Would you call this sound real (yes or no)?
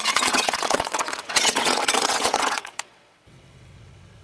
no